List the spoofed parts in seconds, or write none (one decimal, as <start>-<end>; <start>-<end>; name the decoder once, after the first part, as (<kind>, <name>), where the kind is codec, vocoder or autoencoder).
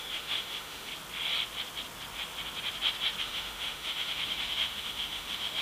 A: 0.0-0.9 (autoencoder, DAC-VAE); 3.2-5.6